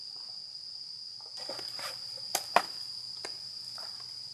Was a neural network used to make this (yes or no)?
no